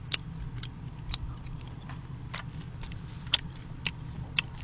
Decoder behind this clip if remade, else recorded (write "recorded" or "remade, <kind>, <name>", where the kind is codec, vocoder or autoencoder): remade, vocoder, BigVGAN v2